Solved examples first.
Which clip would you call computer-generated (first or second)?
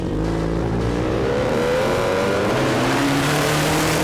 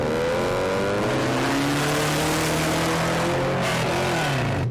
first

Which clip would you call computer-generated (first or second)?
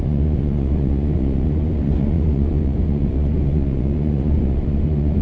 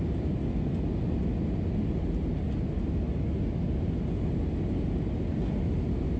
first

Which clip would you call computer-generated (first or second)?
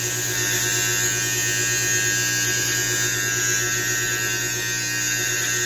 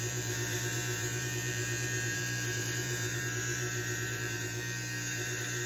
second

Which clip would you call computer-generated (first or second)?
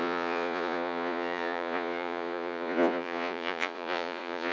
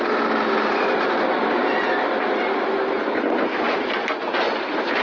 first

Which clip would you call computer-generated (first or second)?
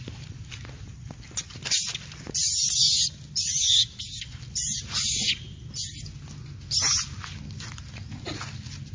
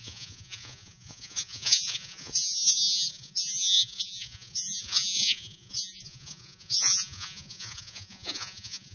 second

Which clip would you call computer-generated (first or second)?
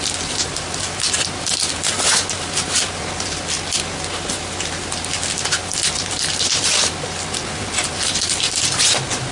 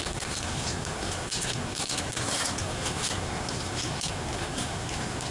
second